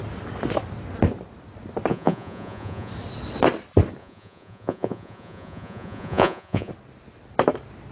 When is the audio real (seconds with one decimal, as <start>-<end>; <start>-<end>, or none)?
0.0-1.9; 2.9-4.0; 6.7-7.9